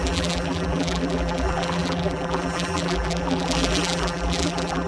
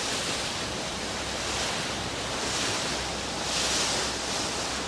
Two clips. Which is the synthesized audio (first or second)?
first